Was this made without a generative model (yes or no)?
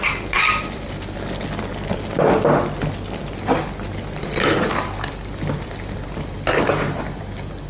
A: yes